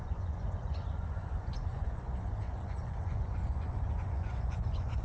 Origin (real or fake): fake